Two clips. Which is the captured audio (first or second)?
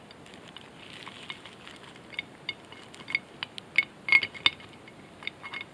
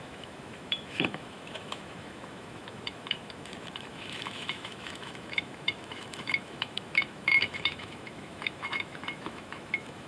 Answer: first